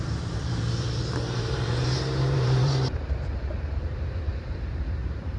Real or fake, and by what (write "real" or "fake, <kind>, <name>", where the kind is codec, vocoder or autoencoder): fake, vocoder, BigVGAN v2